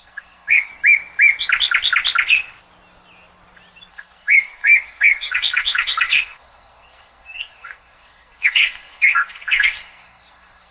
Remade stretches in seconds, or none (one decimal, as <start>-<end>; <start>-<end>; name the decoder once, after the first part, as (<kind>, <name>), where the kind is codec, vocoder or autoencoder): 0.0-0.7 (codec, SNAC); 3.9-10.7